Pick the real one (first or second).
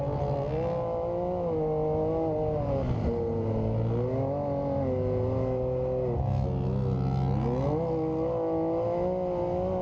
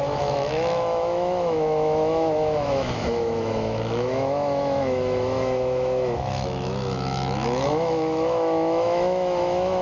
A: first